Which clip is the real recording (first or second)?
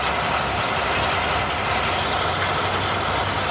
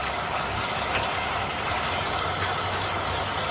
first